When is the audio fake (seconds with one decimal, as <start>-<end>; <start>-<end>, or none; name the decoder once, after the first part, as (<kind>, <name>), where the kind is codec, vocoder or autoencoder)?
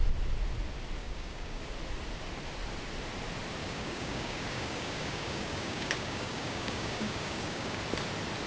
1.0-1.6 (codec, DAC); 3.6-7.8